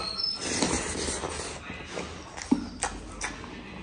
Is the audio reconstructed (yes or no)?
no